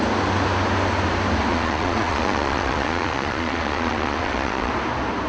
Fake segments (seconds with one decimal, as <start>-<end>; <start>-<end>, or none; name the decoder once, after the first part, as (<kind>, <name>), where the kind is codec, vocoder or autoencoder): 1.5-4.7 (vocoder, Vocos)